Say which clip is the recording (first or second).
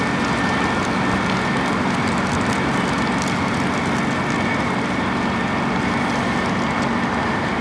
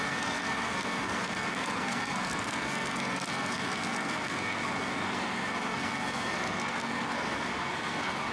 first